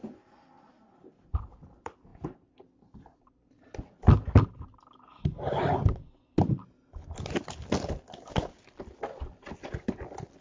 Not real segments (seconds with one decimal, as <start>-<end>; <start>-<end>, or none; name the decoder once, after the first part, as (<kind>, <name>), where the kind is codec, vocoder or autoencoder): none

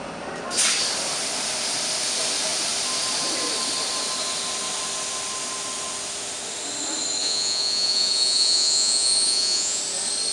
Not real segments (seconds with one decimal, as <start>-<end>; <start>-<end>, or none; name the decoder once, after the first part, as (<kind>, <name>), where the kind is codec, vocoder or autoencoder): 7.2-9.8 (vocoder, Vocos)

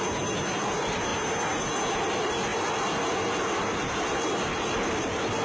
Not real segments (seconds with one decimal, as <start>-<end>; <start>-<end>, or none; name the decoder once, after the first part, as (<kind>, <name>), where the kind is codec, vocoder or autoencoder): 0.0-1.1 (vocoder, BigVGAN v2); 2.0-5.4

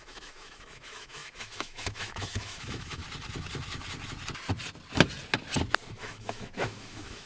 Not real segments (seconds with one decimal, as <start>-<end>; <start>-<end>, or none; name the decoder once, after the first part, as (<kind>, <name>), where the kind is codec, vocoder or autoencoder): 0.0-3.0 (autoencoder, DAC-VAE); 6.0-7.3

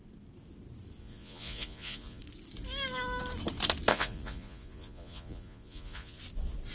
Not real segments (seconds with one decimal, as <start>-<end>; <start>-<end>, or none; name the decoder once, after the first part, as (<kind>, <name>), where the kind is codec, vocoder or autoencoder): 1.0-2.2 (vocoder, Vocos); 3.9-6.2

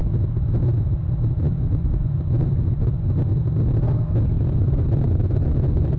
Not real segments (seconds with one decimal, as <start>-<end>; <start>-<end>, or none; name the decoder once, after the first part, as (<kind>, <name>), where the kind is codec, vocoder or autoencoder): 1.4-3.3 (vocoder, Vocos); 4.5-6.0